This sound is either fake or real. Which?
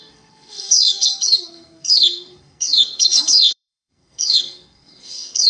fake